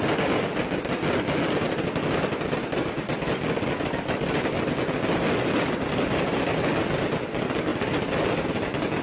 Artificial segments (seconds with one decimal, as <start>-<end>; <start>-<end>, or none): none